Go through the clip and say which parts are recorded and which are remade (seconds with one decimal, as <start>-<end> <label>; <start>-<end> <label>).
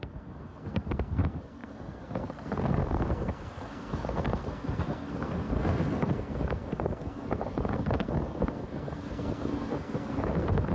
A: 0.0-10.7 remade